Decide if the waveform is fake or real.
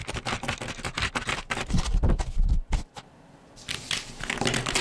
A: real